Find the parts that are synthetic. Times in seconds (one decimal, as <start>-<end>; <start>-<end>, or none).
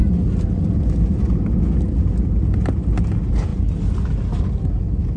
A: none